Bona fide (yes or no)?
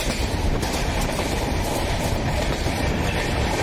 no